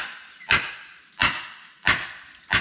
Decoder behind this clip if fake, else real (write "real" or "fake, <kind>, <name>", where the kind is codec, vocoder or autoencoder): real